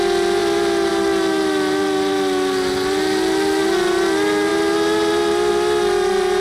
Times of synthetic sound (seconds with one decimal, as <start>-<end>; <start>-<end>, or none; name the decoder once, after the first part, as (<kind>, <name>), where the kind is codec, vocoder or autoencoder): none